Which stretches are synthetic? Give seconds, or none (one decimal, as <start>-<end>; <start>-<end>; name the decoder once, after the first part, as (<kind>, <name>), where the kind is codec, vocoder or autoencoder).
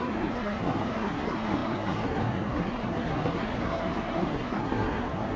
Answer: 0.0-5.4 (codec, SNAC)